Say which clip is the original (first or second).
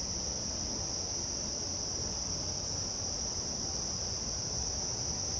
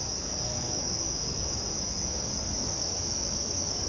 first